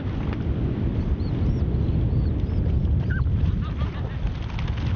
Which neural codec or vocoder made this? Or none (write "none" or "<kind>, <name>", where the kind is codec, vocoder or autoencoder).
none